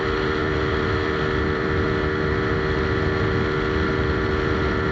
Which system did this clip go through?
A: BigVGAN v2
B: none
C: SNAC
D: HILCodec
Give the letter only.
B